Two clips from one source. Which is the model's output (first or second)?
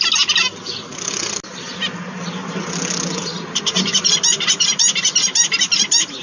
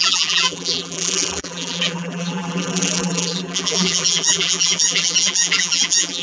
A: second